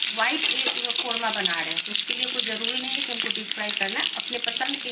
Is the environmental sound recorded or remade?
recorded